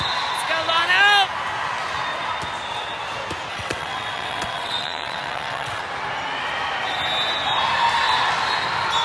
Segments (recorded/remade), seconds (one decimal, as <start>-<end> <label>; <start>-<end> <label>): 0.0-3.5 recorded; 3.5-5.8 remade; 5.8-9.0 recorded